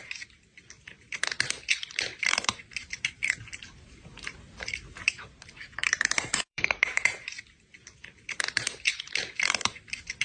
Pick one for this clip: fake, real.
fake